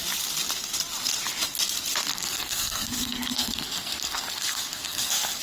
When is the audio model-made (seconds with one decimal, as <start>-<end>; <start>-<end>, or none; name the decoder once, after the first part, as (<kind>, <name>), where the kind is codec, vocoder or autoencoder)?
2.1-5.4 (codec, SNAC)